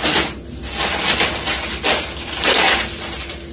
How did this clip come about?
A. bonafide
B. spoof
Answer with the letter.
A